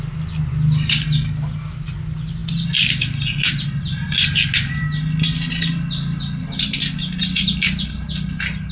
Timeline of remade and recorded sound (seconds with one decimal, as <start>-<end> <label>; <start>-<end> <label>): 0.0-8.7 recorded